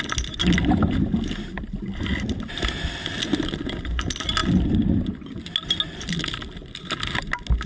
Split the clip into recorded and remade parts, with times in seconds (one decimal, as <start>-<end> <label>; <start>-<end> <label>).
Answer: 0.0-7.7 recorded